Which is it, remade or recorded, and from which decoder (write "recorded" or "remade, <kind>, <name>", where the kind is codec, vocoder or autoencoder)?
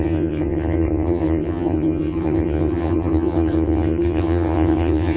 remade, vocoder, HiFi-GAN